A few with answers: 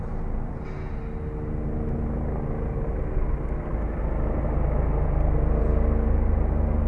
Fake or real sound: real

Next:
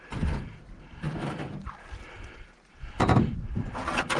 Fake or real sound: real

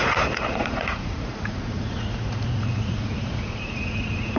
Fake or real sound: fake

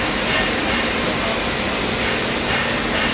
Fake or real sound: real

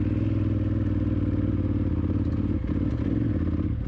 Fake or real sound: real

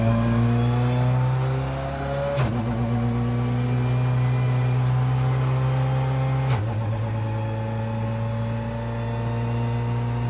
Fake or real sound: real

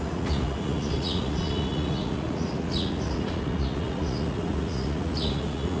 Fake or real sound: fake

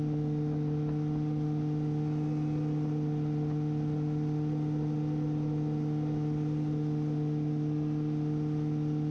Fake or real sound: real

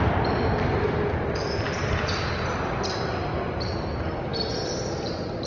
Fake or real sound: real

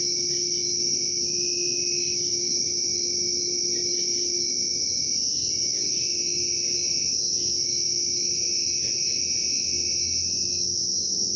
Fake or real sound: real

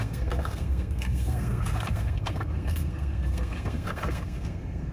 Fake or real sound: fake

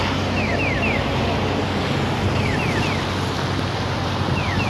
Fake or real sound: real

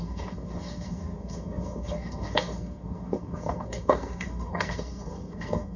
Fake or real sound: fake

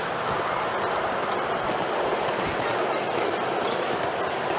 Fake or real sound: real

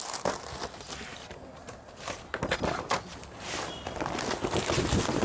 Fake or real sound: real